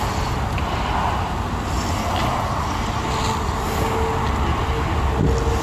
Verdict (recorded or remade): recorded